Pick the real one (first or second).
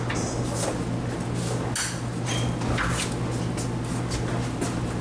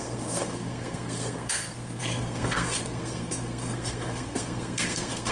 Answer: first